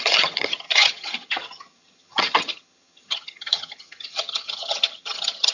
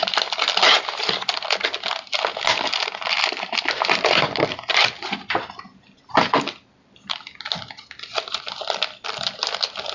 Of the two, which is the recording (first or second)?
second